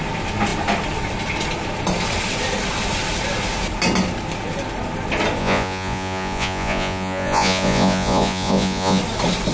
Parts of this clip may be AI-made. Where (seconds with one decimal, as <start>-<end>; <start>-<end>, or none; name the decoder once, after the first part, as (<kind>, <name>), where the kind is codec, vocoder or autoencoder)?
5.4-9.0 (vocoder, Vocos)